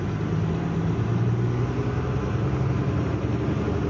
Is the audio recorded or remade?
recorded